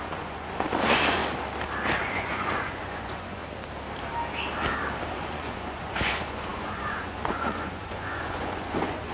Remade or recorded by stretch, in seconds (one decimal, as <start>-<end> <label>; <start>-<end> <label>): 0.0-1.2 remade; 1.2-2.0 recorded; 2.0-3.4 remade; 3.4-5.1 recorded; 5.1-9.1 remade